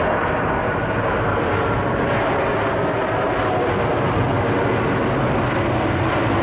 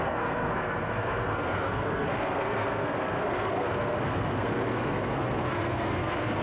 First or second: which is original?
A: first